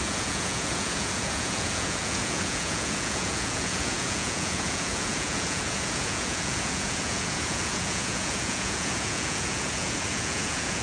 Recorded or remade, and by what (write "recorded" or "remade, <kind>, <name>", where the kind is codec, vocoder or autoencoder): remade, vocoder, Vocos